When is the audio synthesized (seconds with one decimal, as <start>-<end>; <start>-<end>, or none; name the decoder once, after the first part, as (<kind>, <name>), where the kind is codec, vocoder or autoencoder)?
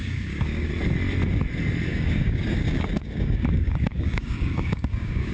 0.0-0.7 (codec, DAC); 1.9-5.3